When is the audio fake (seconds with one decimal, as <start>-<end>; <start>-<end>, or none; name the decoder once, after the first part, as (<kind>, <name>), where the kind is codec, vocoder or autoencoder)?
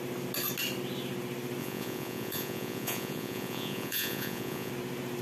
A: 1.6-4.7 (vocoder, Vocos)